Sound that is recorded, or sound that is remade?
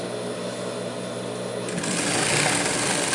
recorded